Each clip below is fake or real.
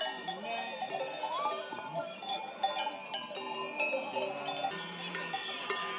real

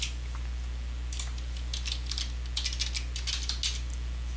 real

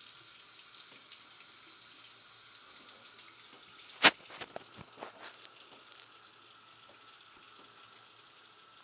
real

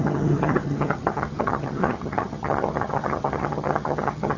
fake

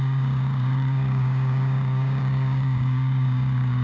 fake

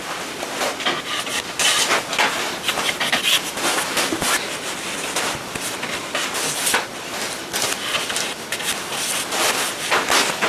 real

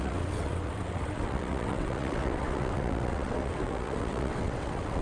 fake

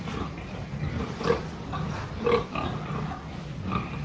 real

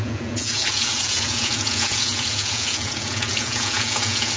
fake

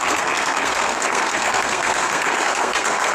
fake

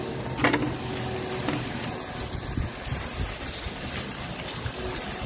real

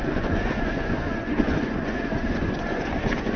fake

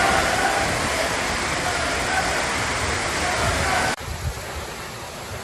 real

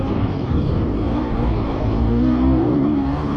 fake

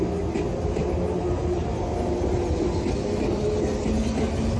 real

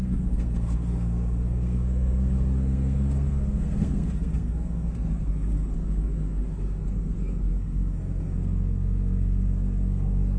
fake